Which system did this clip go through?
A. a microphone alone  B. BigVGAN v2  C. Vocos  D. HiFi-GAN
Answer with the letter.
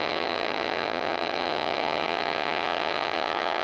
D